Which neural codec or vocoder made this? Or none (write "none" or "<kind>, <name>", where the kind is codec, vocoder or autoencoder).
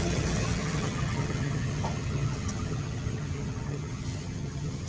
vocoder, HiFi-GAN